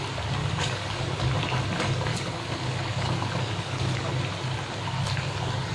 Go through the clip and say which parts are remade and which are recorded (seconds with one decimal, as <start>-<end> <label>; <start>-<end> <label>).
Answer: 0.0-0.4 recorded; 0.4-1.2 remade; 1.2-2.1 recorded; 2.1-4.1 remade; 4.1-5.7 recorded